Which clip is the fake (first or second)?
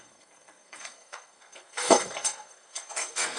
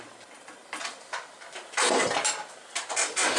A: first